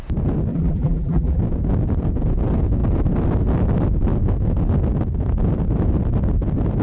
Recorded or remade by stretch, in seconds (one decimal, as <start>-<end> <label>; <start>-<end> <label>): 0.0-0.5 recorded; 0.5-1.4 remade; 1.4-6.8 recorded

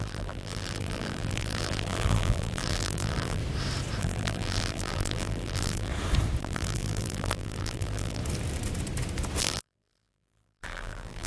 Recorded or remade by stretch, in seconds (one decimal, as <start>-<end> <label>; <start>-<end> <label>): 0.0-3.4 remade; 3.4-4.0 recorded; 4.0-5.9 remade; 5.9-6.4 recorded; 6.4-8.2 remade; 8.2-9.4 recorded; 9.4-11.3 remade

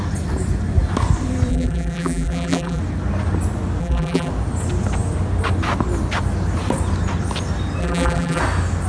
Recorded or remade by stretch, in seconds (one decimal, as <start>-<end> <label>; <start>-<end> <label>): 0.0-1.5 recorded; 1.5-2.8 remade; 2.8-3.8 recorded; 3.8-4.3 remade; 4.3-7.8 recorded; 7.8-8.4 remade; 8.4-8.9 recorded

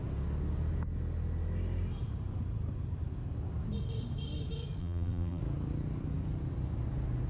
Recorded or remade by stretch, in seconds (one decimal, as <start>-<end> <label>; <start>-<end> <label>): 0.0-4.8 recorded; 4.8-5.4 remade; 5.4-7.3 recorded

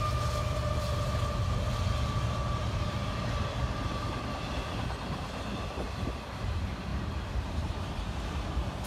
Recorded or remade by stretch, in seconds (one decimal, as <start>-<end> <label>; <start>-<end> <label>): 0.0-6.9 recorded; 6.9-8.0 remade; 8.0-8.9 recorded

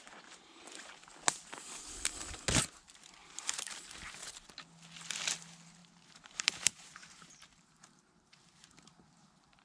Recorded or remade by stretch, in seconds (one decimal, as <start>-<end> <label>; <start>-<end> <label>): 0.0-3.2 recorded; 3.2-4.2 remade; 4.2-5.8 recorded; 5.8-9.6 remade